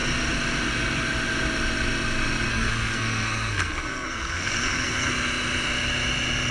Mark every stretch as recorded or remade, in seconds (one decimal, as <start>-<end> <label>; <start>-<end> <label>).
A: 0.0-2.5 recorded; 2.5-5.1 remade; 5.1-6.5 recorded